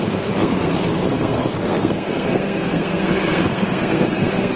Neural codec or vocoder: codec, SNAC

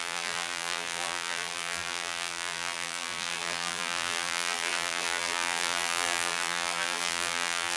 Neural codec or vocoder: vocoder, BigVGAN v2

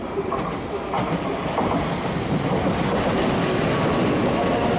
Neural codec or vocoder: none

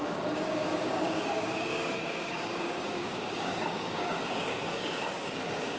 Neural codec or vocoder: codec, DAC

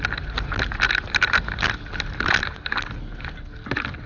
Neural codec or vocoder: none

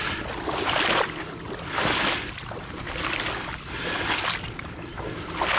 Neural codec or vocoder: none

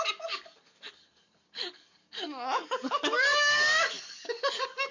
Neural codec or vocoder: codec, DAC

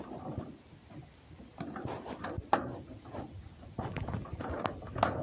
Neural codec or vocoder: none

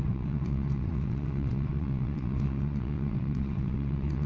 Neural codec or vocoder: vocoder, WaveNeXt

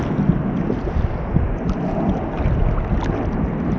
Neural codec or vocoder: none